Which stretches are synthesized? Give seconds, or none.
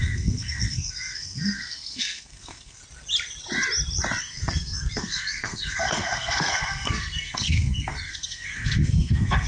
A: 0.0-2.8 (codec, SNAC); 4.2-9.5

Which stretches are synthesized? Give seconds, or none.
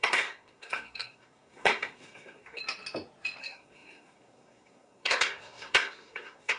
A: 0.0-2.6 (codec, SNAC); 3.4-6.6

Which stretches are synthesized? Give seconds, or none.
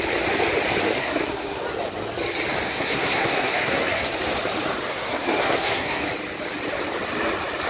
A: 1.0-1.6 (codec, SNAC); 2.7-4.1; 4.9-6.0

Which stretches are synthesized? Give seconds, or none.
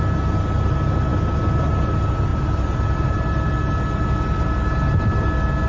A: none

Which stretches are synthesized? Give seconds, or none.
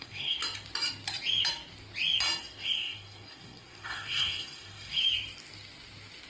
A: 0.0-0.4 (codec, SNAC); 2.4-5.0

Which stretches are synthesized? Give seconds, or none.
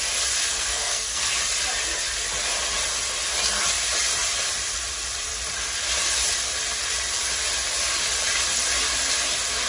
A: 0.5-1.3 (codec, SNAC)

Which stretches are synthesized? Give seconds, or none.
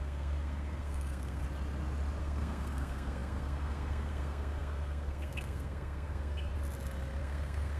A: 0.0-1.4 (codec, SNAC); 2.2-6.5; 7.2-7.8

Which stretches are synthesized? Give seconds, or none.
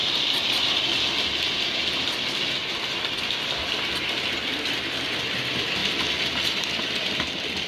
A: none